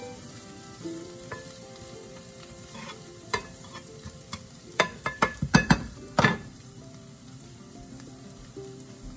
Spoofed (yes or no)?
yes